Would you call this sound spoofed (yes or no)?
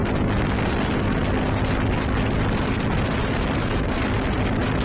no